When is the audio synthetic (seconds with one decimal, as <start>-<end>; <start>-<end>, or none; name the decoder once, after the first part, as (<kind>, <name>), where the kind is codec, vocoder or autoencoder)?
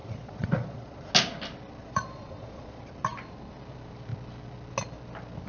0.0-1.1 (vocoder, Vocos); 1.8-2.8